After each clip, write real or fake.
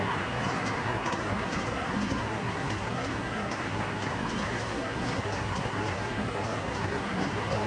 fake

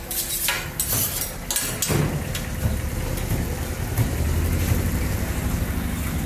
real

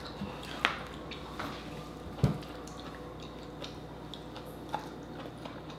real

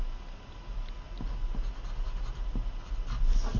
real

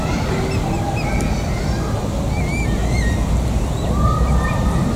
real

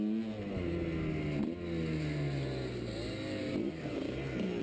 real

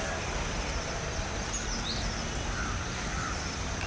fake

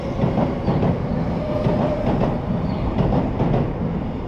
real